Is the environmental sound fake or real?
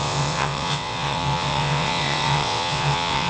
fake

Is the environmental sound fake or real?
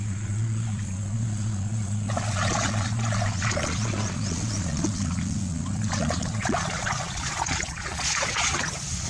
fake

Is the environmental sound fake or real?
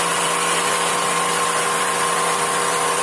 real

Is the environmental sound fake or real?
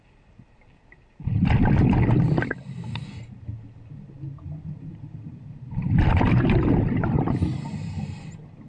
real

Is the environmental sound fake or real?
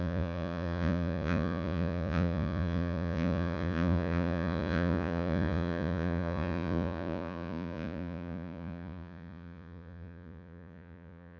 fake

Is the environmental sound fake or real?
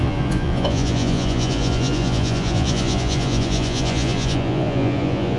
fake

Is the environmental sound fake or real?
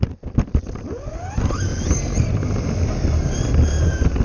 real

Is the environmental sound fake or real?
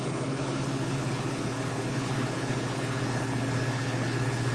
fake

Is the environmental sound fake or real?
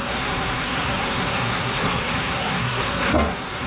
fake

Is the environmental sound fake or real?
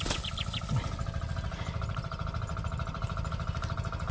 real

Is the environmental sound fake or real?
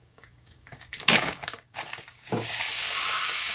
fake